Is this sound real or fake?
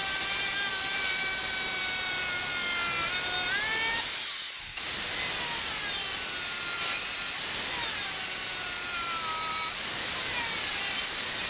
real